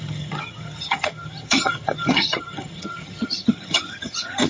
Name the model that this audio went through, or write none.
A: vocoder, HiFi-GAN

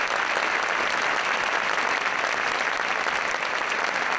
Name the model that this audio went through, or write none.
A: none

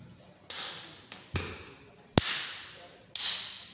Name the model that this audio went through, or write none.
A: none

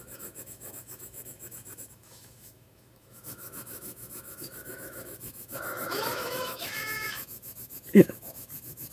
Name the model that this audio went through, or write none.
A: autoencoder, DAC-VAE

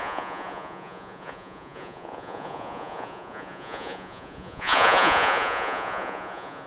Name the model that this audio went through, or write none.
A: vocoder, Vocos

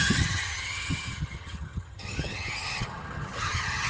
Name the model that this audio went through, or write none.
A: vocoder, HiFi-GAN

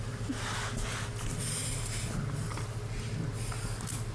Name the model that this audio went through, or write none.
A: none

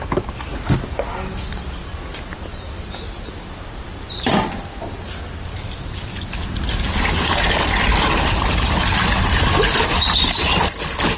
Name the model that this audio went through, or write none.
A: none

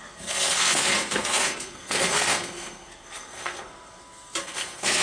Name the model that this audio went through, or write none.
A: codec, SNAC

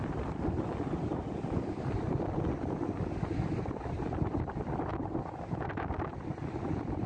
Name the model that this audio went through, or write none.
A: none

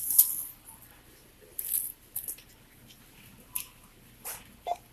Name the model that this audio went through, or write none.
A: none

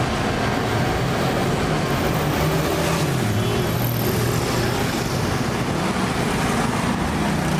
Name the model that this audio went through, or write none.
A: none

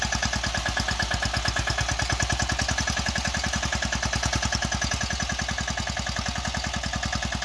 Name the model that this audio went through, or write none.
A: none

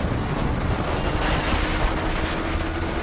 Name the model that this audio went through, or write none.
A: none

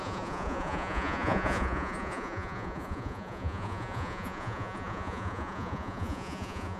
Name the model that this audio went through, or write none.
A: vocoder, Vocos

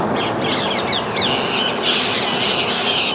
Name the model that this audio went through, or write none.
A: none